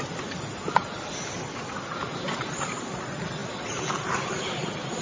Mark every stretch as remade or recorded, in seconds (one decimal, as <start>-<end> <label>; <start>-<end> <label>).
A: 0.0-5.0 recorded